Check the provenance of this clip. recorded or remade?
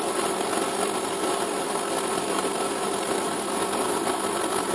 recorded